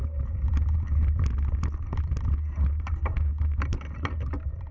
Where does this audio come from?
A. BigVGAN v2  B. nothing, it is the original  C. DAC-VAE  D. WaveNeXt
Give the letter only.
B